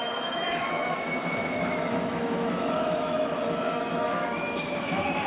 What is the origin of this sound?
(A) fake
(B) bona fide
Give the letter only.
A